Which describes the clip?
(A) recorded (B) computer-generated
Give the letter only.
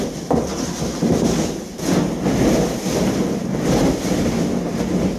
A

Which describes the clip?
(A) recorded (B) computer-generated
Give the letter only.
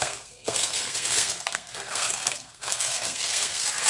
B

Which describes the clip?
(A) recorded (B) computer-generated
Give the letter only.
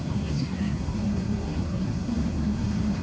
B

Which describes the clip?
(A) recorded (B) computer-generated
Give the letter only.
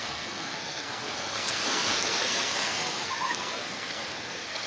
B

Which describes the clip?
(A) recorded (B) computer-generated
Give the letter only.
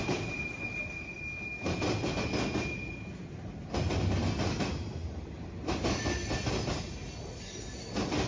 A